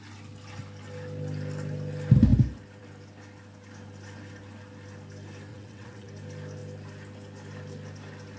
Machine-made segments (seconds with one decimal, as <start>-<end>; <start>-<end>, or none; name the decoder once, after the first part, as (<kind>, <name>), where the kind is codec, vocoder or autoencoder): 5.5-6.1 (vocoder, WaveNeXt)